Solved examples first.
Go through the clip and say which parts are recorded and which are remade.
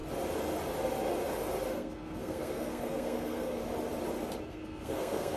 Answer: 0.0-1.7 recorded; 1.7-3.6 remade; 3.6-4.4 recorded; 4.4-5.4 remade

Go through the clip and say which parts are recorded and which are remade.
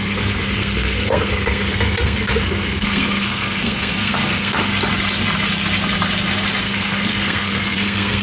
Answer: 0.0-4.7 remade; 4.7-6.6 recorded; 6.6-8.2 remade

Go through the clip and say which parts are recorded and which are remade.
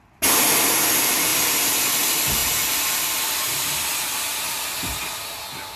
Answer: 0.0-5.8 recorded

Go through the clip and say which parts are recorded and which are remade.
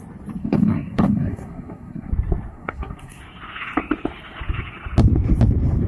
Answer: 0.0-0.4 recorded; 0.4-2.1 remade; 2.1-2.5 recorded; 2.5-3.2 remade; 3.2-5.9 recorded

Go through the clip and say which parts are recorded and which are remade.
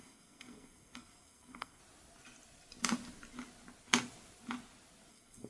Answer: 0.0-1.8 remade; 1.8-5.1 recorded; 5.1-5.5 remade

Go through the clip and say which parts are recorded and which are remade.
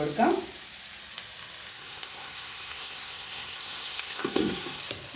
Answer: 0.0-1.7 recorded; 1.7-4.8 remade; 4.8-5.2 recorded